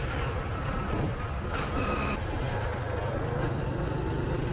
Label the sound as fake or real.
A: real